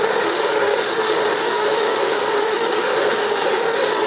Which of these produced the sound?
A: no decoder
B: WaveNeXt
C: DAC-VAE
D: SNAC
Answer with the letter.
C